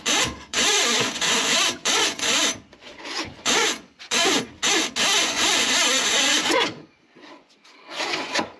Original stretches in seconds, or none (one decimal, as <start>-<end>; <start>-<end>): 4.6-5.2